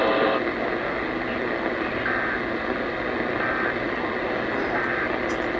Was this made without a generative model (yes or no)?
yes